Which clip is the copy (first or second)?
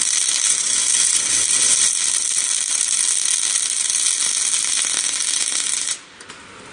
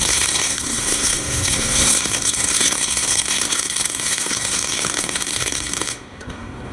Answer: second